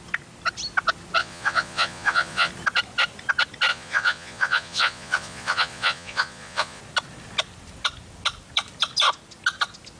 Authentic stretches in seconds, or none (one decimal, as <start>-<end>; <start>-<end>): 0.0-1.2; 2.5-3.7; 6.8-10.0